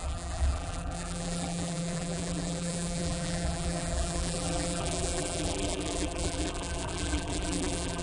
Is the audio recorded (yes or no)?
no